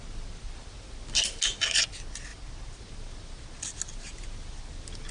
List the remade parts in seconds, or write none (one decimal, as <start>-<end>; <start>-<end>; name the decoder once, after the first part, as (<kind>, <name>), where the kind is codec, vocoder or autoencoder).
none